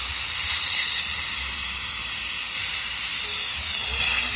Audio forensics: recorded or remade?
recorded